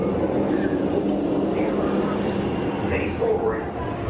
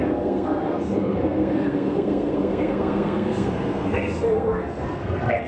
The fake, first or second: second